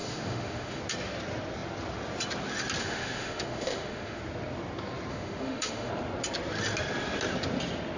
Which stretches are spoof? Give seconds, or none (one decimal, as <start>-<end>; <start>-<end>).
0.0-0.8; 2.8-4.2; 5.1-5.9